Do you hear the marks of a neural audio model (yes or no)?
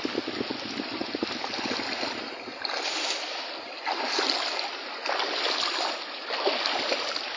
no